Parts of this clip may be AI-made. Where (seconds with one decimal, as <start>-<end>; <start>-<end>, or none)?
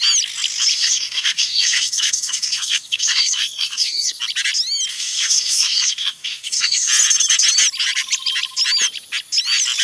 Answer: 0.7-4.2; 4.9-6.9